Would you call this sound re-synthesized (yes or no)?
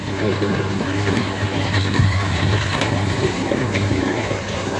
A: yes